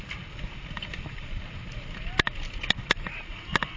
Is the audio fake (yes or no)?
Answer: no